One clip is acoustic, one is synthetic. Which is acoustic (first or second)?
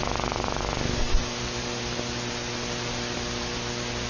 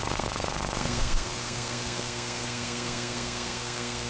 first